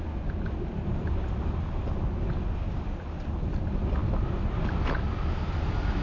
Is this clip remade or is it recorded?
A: recorded